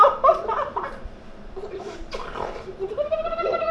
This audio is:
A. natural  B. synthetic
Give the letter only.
B